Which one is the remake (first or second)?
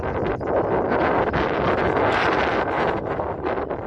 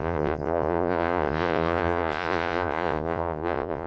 second